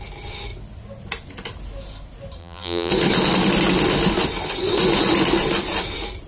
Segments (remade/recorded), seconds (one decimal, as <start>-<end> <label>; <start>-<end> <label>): 0.0-2.4 recorded; 2.4-2.9 remade; 2.9-6.3 recorded